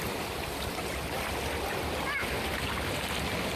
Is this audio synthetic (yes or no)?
no